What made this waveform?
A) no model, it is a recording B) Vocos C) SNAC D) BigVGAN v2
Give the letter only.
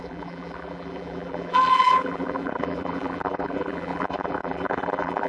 D